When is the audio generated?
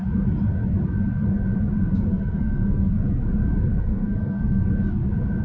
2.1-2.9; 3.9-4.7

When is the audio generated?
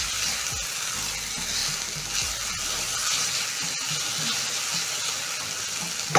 none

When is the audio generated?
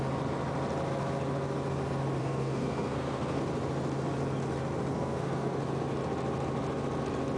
2.2-3.4; 4.9-5.6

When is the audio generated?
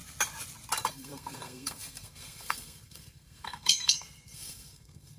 0.9-5.2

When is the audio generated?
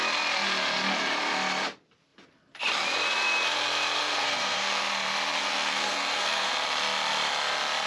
4.0-4.8; 5.4-6.5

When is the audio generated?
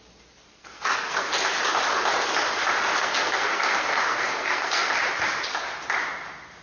0.5-1.3; 2.9-4.9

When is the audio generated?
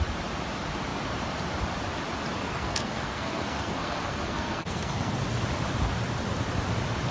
2.4-5.1